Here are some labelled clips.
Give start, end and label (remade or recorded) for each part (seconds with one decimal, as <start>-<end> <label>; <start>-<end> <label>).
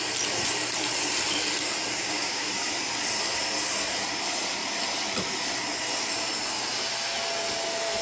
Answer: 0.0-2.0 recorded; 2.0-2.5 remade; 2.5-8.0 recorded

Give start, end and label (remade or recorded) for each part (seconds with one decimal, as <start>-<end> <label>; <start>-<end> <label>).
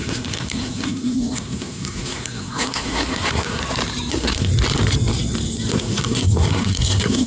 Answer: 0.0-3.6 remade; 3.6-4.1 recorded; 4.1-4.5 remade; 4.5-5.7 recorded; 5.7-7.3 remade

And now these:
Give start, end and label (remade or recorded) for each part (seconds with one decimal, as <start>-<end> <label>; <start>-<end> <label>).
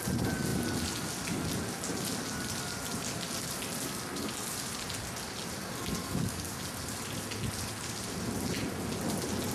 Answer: 0.0-6.0 recorded; 6.0-6.6 remade; 6.6-9.5 recorded